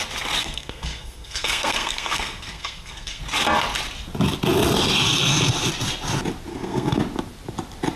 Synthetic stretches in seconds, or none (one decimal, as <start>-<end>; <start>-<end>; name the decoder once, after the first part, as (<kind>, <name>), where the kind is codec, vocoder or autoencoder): 0.4-3.2 (codec, SNAC); 6.5-7.0

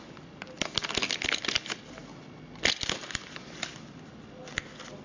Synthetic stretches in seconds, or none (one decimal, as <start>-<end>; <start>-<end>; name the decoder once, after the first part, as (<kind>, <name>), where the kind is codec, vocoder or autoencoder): none

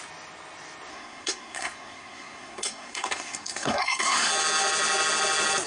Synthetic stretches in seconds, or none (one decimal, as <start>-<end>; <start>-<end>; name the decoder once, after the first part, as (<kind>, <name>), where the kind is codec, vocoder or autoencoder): 0.9-4.3 (codec, SNAC)

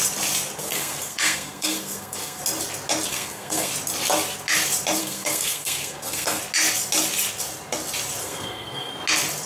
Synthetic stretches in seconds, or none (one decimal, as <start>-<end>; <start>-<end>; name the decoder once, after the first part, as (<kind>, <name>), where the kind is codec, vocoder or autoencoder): 0.6-2.4 (codec, SNAC); 3.1-3.7; 5.0-6.4; 8.2-8.9

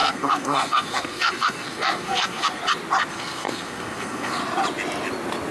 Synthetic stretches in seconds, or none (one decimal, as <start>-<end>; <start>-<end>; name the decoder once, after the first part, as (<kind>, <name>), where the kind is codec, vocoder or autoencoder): 0.0-2.6 (codec, SNAC); 3.1-4.4

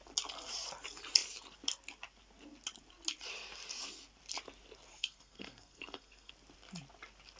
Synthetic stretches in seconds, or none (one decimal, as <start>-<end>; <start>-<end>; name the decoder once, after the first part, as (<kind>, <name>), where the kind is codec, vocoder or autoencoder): 4.9-6.3 (codec, SNAC)